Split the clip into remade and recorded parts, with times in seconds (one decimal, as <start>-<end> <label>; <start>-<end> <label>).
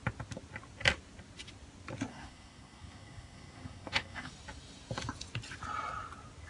0.0-2.1 recorded; 2.1-4.3 remade; 4.3-6.5 recorded